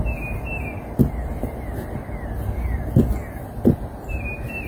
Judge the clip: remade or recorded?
recorded